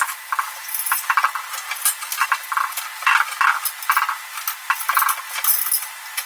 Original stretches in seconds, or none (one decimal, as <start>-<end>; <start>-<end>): 0.0-6.3